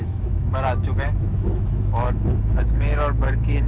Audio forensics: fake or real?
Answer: fake